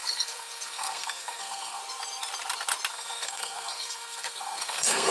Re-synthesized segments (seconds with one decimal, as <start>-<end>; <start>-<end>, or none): 0.0-1.8; 2.9-5.1